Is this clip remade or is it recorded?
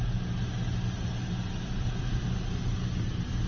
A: recorded